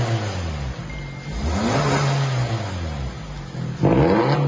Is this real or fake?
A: real